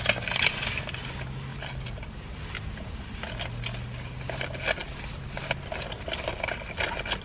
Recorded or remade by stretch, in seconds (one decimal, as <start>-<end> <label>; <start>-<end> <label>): 0.0-7.2 recorded